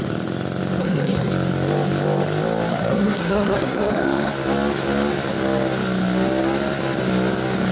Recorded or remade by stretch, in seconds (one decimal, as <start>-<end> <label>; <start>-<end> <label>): 0.0-0.8 recorded; 0.8-1.3 remade; 1.3-2.7 recorded; 2.7-4.3 remade; 4.3-7.7 recorded